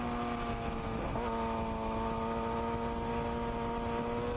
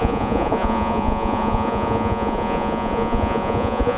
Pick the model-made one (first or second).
second